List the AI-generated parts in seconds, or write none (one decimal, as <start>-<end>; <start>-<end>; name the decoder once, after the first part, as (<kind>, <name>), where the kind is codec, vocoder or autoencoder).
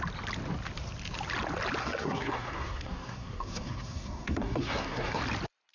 1.8-5.2 (codec, SNAC)